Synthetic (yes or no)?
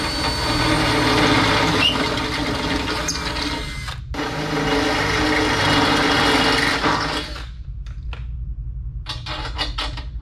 no